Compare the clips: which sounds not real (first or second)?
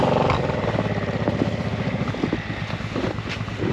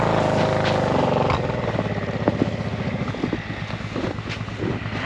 first